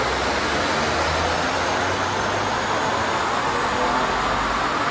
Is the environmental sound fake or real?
real